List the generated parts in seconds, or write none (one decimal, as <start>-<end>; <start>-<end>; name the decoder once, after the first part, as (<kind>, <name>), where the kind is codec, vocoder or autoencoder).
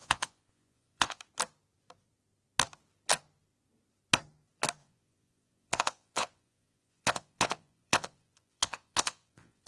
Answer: 0.0-1.2 (vocoder, Vocos); 4.8-9.7